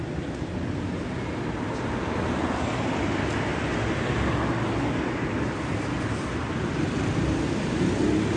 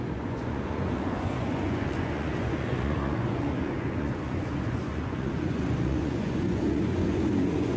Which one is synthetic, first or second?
second